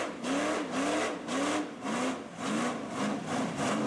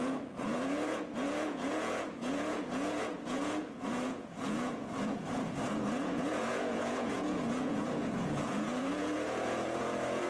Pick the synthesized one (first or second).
second